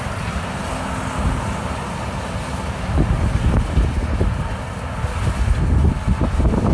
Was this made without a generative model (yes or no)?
yes